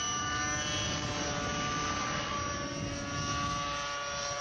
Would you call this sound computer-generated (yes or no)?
no